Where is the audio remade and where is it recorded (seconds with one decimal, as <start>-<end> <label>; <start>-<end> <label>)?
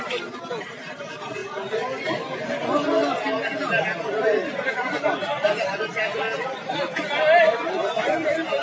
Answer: 0.0-8.6 recorded